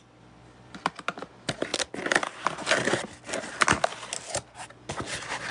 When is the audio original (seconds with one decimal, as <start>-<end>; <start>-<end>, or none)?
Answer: 0.0-5.5